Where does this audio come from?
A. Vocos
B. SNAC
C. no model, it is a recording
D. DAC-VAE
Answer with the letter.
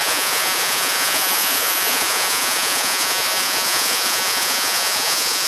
A